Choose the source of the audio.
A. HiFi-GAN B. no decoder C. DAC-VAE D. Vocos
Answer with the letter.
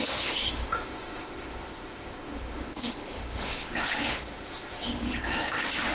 C